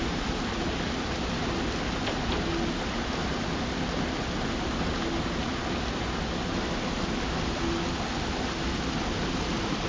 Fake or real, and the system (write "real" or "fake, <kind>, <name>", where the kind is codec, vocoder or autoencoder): real